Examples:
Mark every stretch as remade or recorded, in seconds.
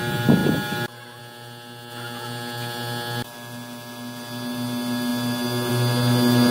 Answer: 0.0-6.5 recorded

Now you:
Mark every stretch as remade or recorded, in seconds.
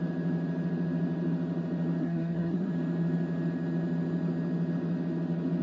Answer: 0.0-2.0 recorded; 2.0-2.7 remade; 2.7-5.6 recorded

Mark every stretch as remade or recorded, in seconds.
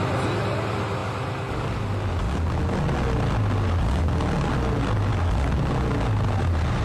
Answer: 0.0-6.8 recorded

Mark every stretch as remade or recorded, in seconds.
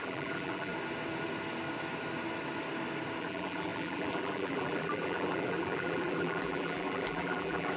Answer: 0.0-0.7 remade; 0.7-3.2 recorded; 3.2-7.8 remade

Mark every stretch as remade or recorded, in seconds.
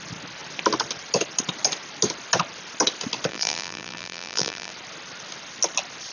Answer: 0.0-3.3 recorded; 3.3-4.7 remade; 4.7-6.1 recorded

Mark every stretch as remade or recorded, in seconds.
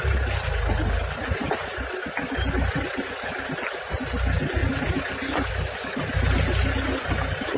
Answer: 0.0-7.6 recorded